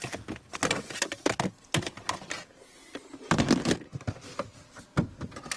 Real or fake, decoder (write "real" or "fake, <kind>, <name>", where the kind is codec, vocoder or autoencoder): real